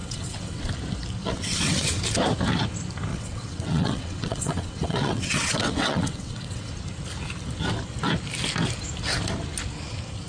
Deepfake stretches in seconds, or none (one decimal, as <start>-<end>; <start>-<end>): 0.0-0.7; 1.2-2.0; 3.1-6.7